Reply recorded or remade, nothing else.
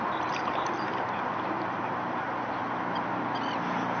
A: recorded